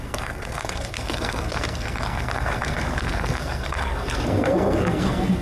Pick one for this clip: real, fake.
fake